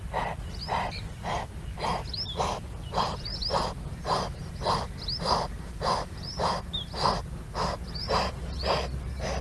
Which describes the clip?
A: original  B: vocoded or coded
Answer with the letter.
A